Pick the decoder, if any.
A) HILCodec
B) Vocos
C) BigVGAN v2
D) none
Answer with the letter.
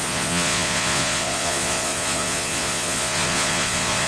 B